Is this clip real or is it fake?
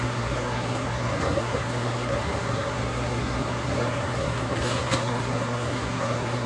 fake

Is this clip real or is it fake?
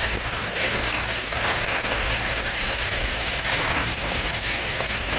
fake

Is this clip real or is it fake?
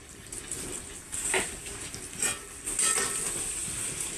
real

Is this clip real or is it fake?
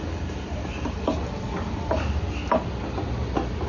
real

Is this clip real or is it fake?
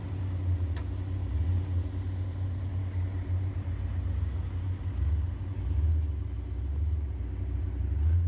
real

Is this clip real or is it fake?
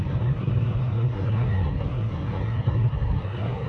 fake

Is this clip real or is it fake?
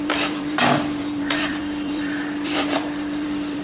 fake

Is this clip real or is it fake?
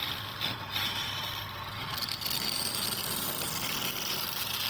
real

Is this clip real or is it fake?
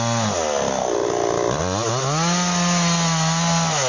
real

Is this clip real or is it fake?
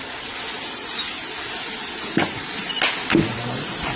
real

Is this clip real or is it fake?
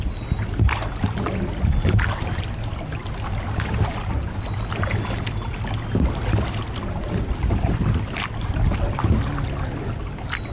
real